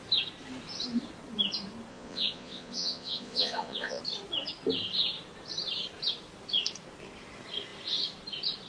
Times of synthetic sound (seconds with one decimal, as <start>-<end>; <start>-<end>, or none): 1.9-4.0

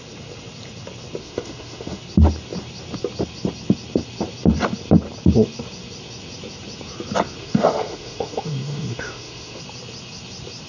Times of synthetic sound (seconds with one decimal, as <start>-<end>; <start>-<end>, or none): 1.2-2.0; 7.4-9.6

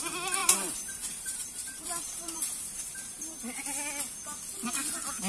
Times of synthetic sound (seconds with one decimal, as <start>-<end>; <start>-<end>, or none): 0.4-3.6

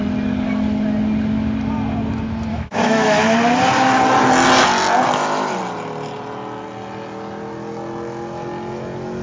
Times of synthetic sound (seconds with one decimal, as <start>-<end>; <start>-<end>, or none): 2.5-3.2

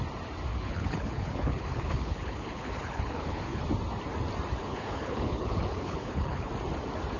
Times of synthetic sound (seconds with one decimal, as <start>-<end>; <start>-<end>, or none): 0.5-3.6; 4.6-6.5